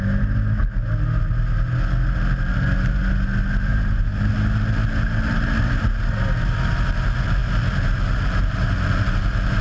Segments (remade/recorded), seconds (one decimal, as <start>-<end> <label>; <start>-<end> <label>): 0.0-3.7 recorded; 3.7-4.3 remade; 4.3-9.6 recorded